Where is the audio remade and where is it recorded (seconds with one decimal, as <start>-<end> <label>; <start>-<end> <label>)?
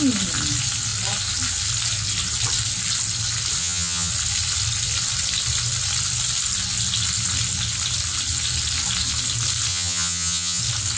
0.0-3.6 recorded; 3.6-4.1 remade; 4.1-9.7 recorded; 9.7-10.6 remade; 10.6-11.0 recorded